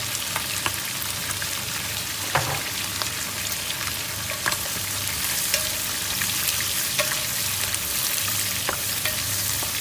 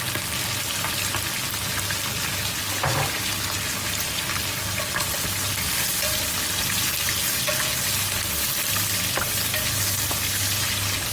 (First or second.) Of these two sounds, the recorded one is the second